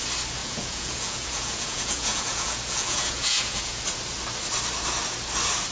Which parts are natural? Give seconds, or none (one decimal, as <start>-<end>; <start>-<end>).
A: 0.0-0.4; 3.8-5.7

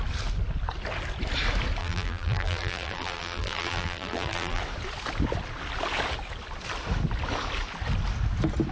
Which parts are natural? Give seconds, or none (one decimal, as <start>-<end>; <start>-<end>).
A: 0.0-1.8; 4.6-8.7

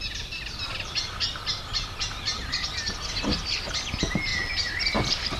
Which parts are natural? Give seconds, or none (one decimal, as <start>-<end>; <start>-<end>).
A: 0.0-2.4; 3.0-4.3

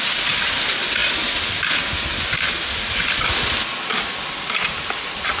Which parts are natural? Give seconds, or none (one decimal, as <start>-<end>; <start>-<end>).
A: 0.0-5.4